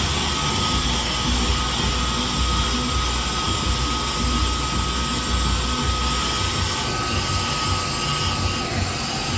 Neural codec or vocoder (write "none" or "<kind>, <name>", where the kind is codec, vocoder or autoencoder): none